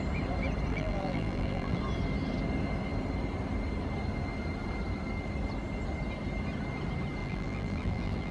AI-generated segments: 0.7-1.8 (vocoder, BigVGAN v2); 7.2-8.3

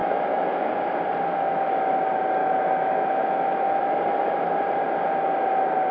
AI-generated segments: 0.0-0.7 (autoencoder, DAC-VAE); 1.3-1.9; 2.4-4.0